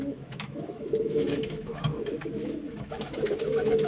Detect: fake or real fake